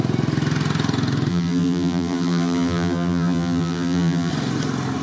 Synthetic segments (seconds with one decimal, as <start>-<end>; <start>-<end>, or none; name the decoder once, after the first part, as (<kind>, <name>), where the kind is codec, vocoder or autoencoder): 1.3-4.3 (vocoder, BigVGAN v2)